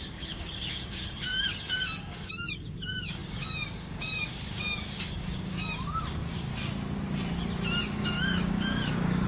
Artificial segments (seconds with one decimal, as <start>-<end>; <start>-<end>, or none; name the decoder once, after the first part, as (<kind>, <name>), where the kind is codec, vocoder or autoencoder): 0.0-6.5 (codec, DAC); 7.8-9.3